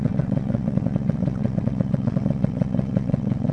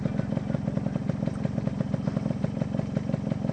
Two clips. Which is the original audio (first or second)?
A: second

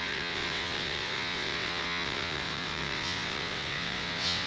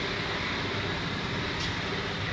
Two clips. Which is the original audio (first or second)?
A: second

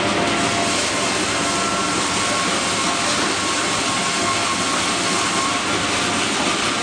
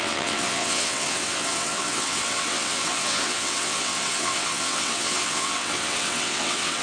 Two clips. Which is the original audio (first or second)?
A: first